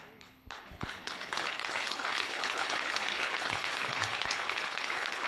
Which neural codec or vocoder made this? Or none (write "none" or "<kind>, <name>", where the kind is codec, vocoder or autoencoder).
codec, HILCodec